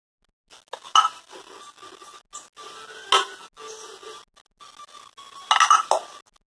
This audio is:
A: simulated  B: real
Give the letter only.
B